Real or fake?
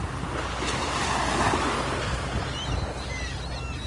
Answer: real